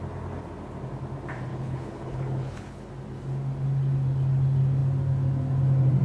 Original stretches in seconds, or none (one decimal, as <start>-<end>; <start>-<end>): 0.0-1.5; 2.9-6.0